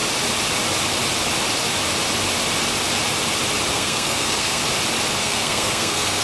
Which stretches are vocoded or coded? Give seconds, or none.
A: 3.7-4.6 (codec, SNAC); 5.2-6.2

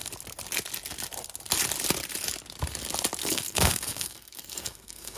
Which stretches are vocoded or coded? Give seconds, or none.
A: 3.2-5.2 (codec, SNAC)

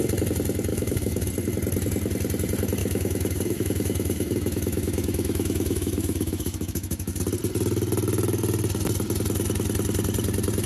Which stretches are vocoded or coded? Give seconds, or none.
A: 0.7-1.3 (autoencoder, DAC-VAE); 2.8-7.2

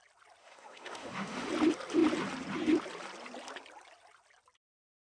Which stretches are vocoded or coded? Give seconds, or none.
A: 0.4-1.5 (autoencoder, DAC-VAE)

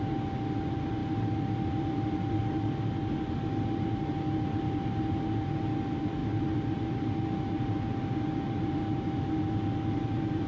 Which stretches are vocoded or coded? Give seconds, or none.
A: none

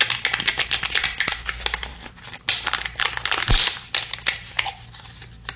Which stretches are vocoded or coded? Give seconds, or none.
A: none

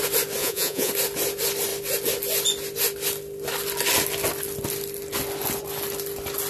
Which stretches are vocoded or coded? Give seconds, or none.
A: 0.4-0.9 (vocoder, Vocos)